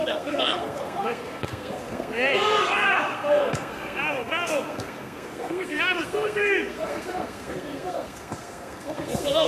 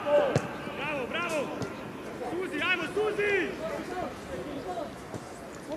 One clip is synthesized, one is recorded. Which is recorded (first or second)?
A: second